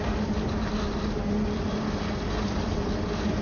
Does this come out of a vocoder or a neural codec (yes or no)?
no